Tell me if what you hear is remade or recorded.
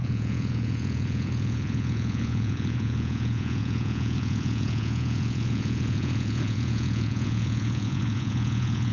remade